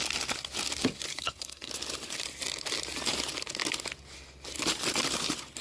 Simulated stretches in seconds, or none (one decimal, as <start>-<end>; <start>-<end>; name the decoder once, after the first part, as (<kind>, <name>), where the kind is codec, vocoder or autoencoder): 1.1-1.7 (codec, SNAC)